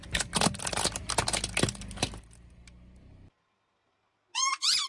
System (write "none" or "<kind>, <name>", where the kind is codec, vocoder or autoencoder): none